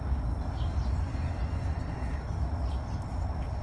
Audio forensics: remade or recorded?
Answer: recorded